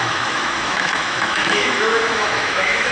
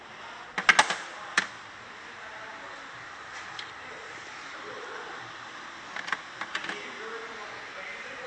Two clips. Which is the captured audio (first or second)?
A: second